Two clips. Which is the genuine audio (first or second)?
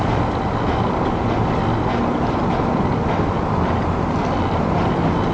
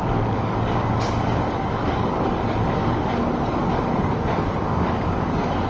first